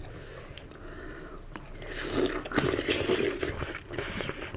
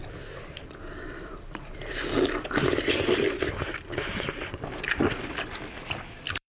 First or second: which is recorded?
first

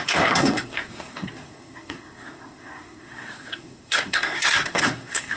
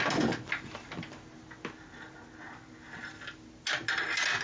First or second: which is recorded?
second